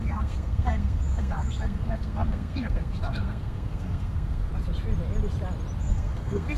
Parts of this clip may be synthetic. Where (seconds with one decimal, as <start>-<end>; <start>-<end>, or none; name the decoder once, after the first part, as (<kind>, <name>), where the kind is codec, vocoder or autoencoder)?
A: 0.0-4.5 (codec, SNAC); 5.8-6.6